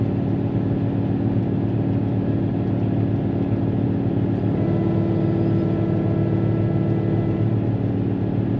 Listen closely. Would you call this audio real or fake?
real